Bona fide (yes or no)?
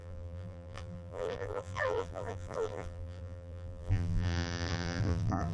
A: no